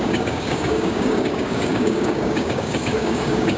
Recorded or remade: remade